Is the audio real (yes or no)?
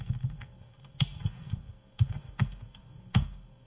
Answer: no